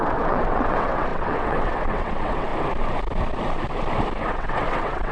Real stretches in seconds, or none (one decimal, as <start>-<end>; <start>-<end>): 2.5-4.3